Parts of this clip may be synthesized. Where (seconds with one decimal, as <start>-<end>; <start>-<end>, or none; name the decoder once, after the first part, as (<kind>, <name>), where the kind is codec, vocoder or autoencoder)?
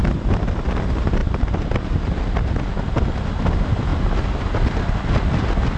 none